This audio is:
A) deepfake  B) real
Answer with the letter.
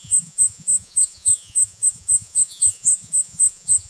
A